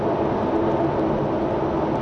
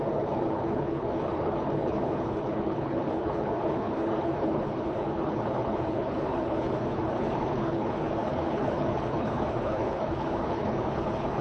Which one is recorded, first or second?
first